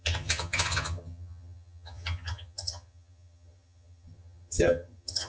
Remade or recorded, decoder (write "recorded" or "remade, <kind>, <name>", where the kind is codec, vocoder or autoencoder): remade, vocoder, HiFi-GAN